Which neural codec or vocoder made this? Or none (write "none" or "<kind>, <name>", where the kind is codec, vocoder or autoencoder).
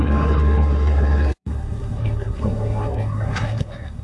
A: codec, SNAC